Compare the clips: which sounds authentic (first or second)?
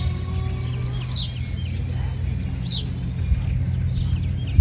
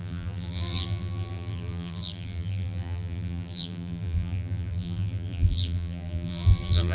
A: first